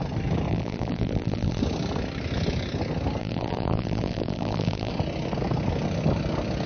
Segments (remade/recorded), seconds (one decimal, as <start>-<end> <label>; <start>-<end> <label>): 0.0-0.5 recorded; 0.5-1.6 remade; 1.6-3.2 recorded; 3.2-4.9 remade; 4.9-6.7 recorded